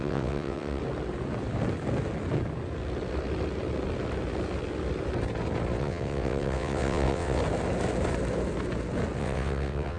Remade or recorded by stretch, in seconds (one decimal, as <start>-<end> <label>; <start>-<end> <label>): 0.0-0.8 remade; 0.8-5.8 recorded; 5.8-7.4 remade; 7.4-9.2 recorded; 9.2-10.0 remade